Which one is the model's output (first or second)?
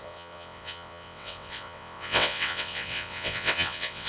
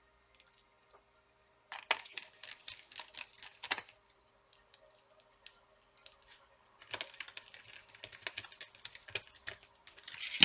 first